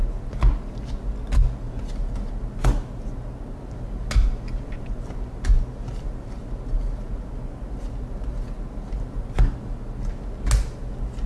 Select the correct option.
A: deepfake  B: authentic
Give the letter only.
B